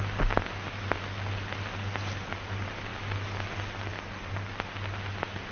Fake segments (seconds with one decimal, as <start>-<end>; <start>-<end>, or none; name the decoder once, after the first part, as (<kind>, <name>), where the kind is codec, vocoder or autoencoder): none

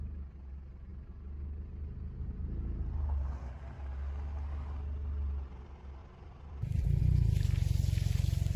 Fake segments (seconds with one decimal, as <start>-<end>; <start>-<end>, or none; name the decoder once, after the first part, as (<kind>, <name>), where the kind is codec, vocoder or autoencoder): 6.0-7.0 (vocoder, BigVGAN v2)

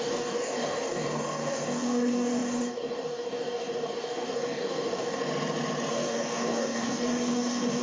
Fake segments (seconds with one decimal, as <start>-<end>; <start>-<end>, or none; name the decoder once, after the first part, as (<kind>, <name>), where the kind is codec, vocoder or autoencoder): 0.0-5.2 (codec, DAC); 5.9-7.8

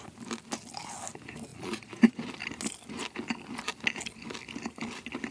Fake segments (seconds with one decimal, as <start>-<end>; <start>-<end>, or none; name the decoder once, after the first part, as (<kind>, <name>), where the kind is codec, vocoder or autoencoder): 1.5-2.2 (vocoder, Vocos)

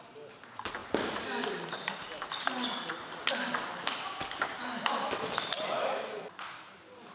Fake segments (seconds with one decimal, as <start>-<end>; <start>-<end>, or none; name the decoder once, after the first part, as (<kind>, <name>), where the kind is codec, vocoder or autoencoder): none